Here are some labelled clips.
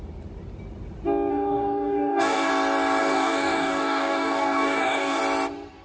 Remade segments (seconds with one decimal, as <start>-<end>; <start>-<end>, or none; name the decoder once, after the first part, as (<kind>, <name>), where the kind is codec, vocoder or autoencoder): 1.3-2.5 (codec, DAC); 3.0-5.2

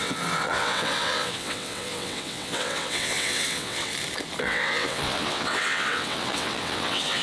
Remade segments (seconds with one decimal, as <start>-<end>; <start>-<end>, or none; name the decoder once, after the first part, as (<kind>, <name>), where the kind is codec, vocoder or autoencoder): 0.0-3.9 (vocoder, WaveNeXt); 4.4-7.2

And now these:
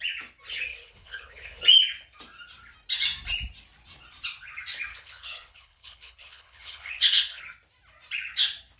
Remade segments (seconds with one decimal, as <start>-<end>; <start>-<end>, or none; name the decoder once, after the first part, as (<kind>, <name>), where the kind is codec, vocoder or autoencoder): 0.7-1.6 (codec, HILCodec); 4.9-7.4